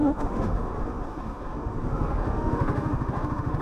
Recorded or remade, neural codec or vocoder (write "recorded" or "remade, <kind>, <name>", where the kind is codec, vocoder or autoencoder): remade, autoencoder, DAC-VAE